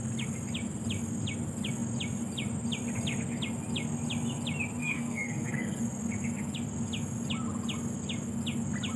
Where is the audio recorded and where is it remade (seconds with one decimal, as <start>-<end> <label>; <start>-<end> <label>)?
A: 0.0-4.8 recorded; 4.8-5.8 remade; 5.8-9.0 recorded